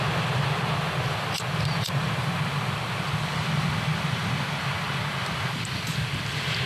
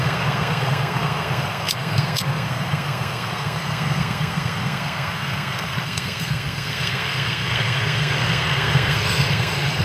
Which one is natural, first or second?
first